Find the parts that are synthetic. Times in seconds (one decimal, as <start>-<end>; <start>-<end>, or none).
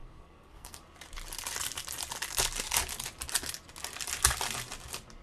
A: 0.0-0.8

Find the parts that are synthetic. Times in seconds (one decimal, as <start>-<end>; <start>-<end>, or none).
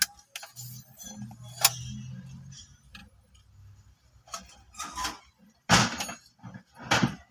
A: none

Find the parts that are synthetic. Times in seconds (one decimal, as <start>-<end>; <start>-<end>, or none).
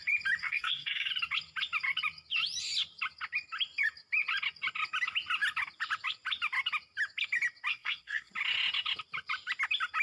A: 0.4-1.1; 7.7-8.3